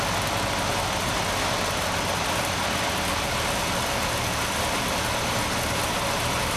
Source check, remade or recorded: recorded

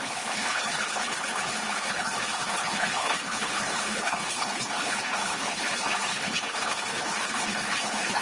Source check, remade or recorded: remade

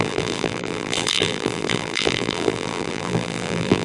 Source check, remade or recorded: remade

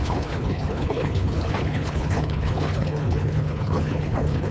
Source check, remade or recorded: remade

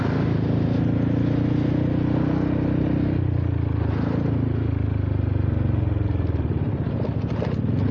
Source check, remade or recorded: recorded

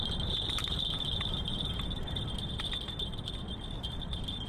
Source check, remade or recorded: remade